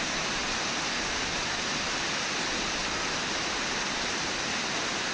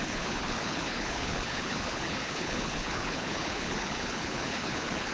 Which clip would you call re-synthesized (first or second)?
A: second